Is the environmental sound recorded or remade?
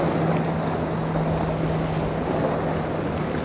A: recorded